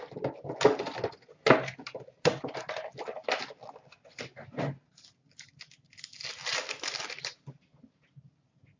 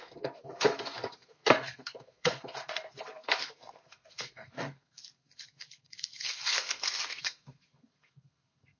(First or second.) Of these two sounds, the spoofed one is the second